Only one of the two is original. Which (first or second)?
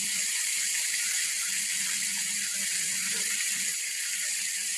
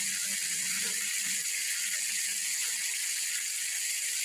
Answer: second